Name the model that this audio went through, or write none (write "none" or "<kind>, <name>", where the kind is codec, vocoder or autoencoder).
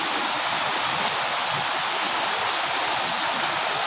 none